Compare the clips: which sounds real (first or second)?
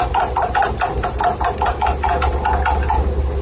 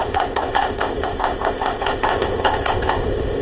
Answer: first